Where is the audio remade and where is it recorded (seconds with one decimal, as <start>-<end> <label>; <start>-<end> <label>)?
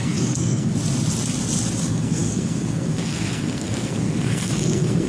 0.0-0.7 remade; 0.7-1.8 recorded; 1.8-5.1 remade